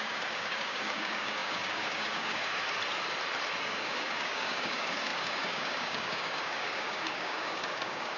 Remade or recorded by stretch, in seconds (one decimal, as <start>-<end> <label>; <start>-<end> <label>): 0.0-2.6 remade; 2.6-3.6 recorded; 3.6-8.2 remade